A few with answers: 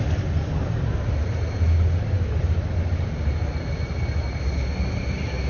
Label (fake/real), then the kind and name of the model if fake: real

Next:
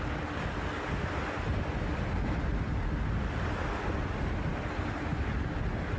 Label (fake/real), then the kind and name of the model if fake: real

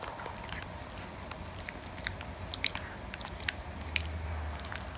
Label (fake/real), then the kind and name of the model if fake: real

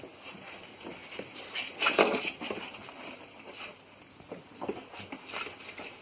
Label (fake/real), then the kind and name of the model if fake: real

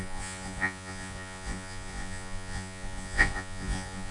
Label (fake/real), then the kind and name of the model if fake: fake, vocoder, Vocos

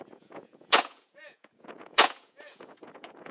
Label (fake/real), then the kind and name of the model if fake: fake, vocoder, Vocos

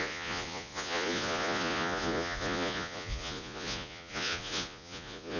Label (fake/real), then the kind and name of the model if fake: fake, vocoder, Vocos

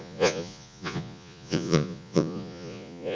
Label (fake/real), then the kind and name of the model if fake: fake, vocoder, Vocos